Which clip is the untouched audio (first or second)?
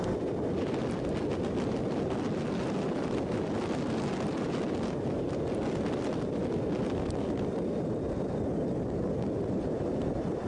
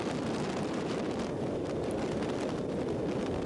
first